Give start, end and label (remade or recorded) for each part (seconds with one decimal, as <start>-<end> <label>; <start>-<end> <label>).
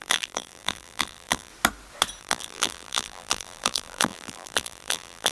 0.0-1.5 remade; 1.5-2.2 recorded; 2.2-5.3 remade